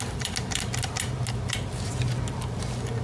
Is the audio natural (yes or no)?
yes